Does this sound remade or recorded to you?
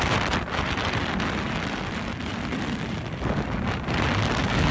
recorded